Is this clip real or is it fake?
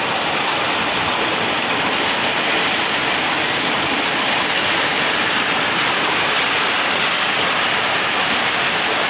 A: real